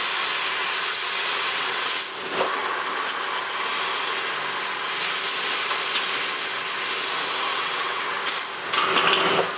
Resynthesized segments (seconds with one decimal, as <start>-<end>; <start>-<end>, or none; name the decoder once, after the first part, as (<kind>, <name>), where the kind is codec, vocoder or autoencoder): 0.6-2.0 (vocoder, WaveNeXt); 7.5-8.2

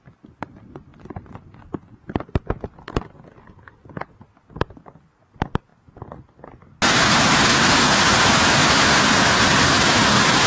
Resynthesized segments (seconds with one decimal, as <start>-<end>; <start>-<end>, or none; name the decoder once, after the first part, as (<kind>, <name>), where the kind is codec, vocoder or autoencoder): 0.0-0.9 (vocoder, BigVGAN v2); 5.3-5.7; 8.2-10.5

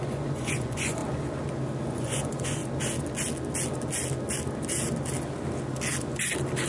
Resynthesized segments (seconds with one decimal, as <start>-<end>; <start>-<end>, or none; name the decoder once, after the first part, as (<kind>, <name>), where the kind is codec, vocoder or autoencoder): 0.0-1.0 (vocoder, Vocos); 1.9-2.6

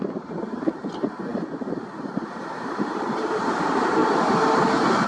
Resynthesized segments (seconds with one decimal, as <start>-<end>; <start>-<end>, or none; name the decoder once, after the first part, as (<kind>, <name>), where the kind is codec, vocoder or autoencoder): 0.0-1.3 (vocoder, BigVGAN v2); 2.6-4.0

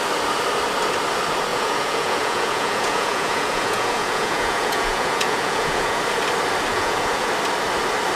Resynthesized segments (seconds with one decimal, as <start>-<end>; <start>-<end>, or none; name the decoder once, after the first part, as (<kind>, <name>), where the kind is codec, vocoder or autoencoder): 1.5-6.0 (vocoder, Vocos); 6.7-7.3